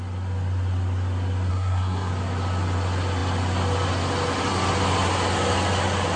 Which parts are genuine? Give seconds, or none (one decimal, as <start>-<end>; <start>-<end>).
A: 0.0-1.5; 2.1-6.2